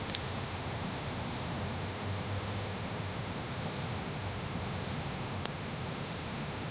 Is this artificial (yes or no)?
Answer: yes